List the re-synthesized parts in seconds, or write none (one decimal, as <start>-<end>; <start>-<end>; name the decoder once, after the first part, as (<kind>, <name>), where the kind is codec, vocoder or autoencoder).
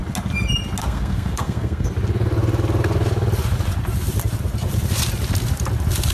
0.8-1.9 (codec, SNAC)